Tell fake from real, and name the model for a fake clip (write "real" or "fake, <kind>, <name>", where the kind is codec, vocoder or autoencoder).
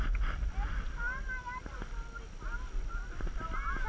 real